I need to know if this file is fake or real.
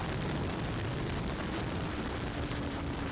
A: fake